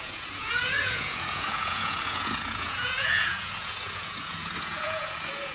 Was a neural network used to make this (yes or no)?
yes